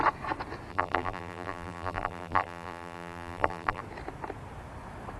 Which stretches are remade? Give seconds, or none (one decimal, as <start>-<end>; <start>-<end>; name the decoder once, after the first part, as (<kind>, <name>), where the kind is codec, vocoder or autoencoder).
0.7-3.8 (vocoder, BigVGAN v2)